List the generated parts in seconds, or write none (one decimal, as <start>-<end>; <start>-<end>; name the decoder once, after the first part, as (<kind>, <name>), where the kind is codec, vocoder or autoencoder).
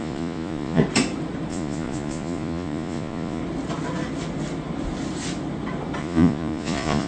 0.0-0.8 (vocoder, Vocos); 1.5-3.4; 6.0-7.1